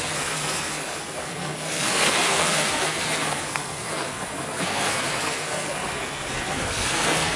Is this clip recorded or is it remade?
remade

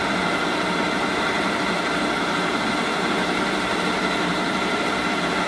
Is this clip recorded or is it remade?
recorded